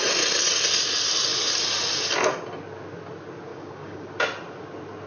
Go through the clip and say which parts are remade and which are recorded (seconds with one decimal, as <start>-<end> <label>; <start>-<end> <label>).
0.0-3.5 recorded; 3.5-4.1 remade; 4.1-5.1 recorded